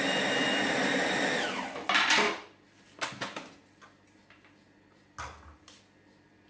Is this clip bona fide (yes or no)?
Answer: yes